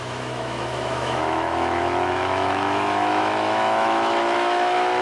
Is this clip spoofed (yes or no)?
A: yes